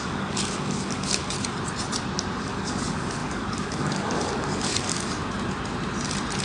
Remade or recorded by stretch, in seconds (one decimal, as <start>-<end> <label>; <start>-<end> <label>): 0.0-1.2 remade; 1.2-2.4 recorded; 2.4-5.2 remade; 5.2-6.4 recorded